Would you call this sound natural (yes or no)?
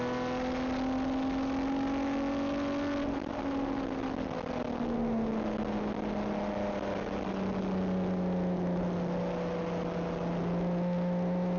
yes